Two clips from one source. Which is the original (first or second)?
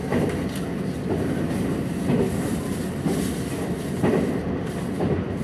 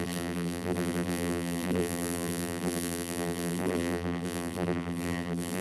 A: first